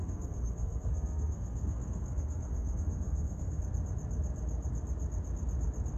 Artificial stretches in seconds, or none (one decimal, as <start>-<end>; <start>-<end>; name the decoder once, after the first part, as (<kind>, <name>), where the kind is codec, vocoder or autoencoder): 0.0-3.6 (codec, SNAC)